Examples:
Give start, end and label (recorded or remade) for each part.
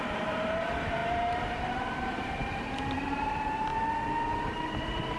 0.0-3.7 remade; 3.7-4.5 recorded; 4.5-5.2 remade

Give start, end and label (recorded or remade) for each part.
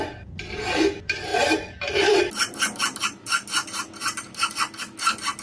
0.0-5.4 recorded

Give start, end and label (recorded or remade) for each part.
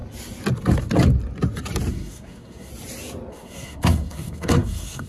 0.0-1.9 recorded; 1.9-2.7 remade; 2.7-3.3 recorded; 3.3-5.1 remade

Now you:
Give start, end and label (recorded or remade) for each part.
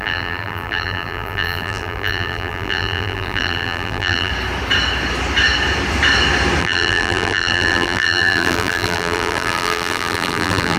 0.0-4.3 remade; 4.3-6.6 recorded; 6.6-10.8 remade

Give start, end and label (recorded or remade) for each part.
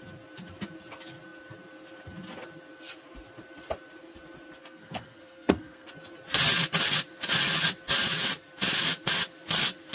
0.0-4.6 recorded; 4.6-5.9 remade; 5.9-9.9 recorded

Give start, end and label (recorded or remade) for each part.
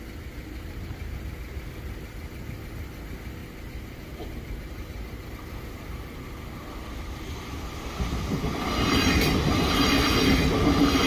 0.0-0.4 recorded; 0.4-1.2 remade; 1.2-3.4 recorded; 3.4-5.3 remade; 5.3-11.1 recorded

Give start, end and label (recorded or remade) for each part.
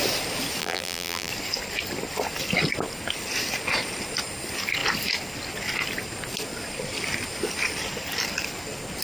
0.0-0.6 recorded; 0.6-1.3 remade; 1.3-9.0 recorded